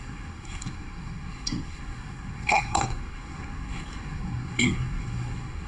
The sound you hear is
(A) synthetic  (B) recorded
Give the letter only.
A